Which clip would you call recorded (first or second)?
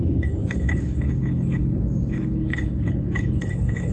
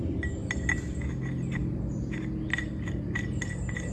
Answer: second